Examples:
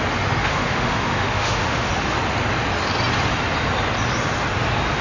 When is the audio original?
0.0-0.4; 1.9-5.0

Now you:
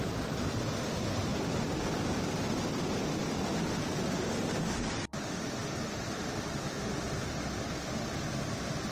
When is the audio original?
1.3-1.8; 5.6-6.4

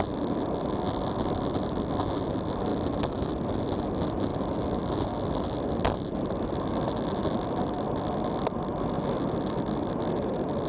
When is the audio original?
0.0-10.7

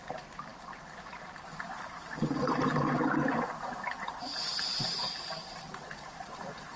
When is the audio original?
0.0-6.8

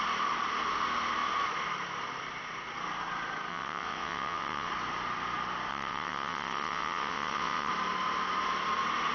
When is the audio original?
0.0-3.5; 4.7-5.7; 7.7-9.1

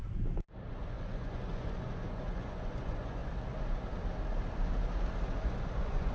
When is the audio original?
0.0-0.7; 3.2-5.4

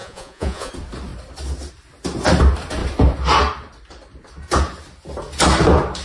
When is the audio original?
0.7-6.0